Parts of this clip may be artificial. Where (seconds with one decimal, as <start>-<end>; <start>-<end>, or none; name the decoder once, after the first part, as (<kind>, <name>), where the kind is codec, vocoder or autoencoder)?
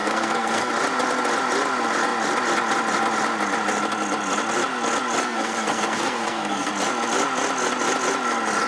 0.0-0.7 (codec, SNAC); 5.2-6.7